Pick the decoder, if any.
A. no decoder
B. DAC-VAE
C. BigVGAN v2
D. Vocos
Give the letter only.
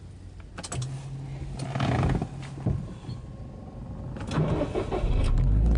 A